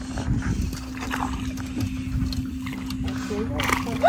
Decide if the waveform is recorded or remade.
recorded